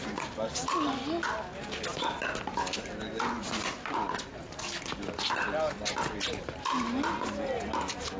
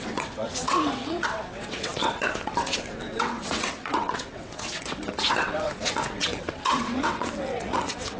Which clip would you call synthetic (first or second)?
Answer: second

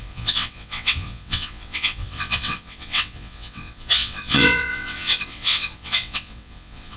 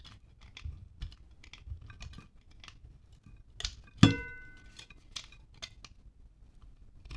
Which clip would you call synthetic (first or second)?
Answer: first